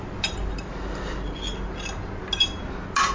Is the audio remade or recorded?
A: recorded